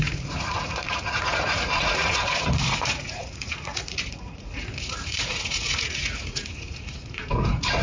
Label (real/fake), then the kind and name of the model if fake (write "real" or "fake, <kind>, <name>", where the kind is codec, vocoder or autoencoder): fake, vocoder, Vocos